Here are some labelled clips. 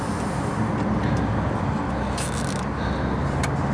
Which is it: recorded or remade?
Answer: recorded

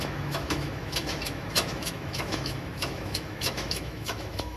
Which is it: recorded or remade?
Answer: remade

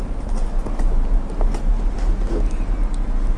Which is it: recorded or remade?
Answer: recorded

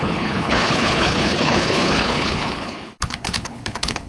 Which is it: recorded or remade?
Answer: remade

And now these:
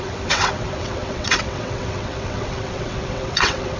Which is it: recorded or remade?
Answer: remade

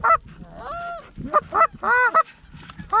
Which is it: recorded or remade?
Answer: recorded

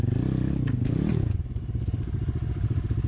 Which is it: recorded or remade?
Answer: recorded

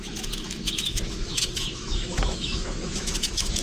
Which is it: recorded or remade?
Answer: remade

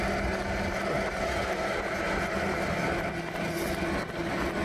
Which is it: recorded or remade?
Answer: recorded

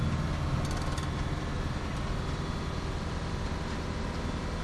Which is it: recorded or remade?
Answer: recorded